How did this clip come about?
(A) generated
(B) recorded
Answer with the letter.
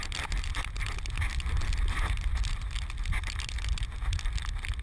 B